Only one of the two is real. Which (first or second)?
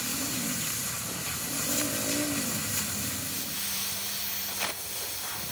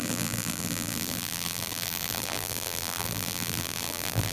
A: first